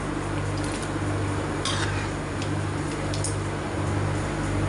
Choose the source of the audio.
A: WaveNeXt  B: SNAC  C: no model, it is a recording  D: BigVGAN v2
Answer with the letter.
C